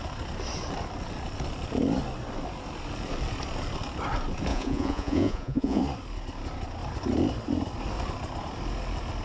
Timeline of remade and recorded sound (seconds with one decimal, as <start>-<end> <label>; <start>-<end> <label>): 0.0-4.5 recorded; 4.5-5.8 remade; 5.8-9.2 recorded